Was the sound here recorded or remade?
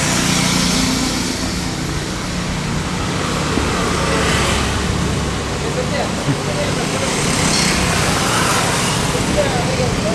recorded